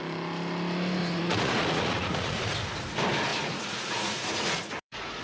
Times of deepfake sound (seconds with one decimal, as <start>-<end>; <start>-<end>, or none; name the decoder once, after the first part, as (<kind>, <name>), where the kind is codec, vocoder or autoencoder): 1.0-2.5 (vocoder, Vocos); 3.3-5.2